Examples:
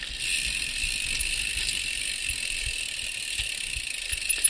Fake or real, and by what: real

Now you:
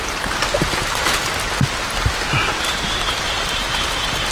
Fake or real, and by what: real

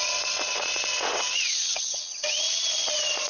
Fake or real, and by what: fake, vocoder, WaveNeXt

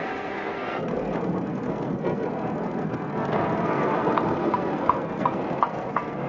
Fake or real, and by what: fake, codec, SNAC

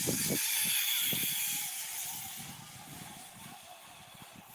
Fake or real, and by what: real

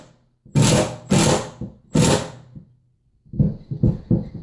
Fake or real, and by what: real